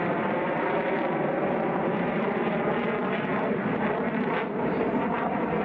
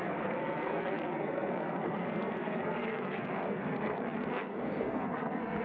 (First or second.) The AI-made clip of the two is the second